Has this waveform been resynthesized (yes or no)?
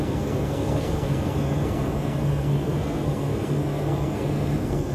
yes